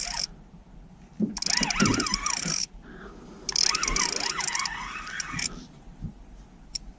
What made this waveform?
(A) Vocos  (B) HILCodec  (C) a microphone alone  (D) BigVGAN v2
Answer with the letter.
C